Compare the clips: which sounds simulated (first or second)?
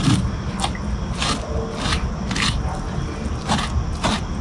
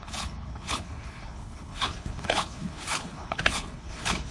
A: second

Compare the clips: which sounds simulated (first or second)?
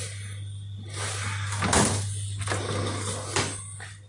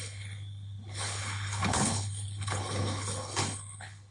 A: second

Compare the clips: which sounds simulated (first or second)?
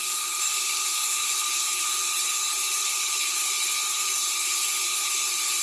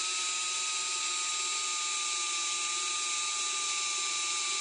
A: first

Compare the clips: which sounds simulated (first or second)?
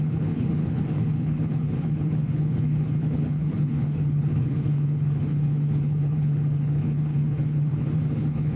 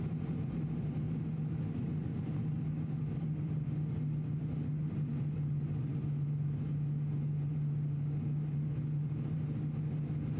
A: first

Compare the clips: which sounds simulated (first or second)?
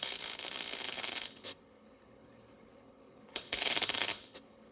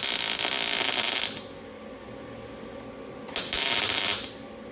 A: first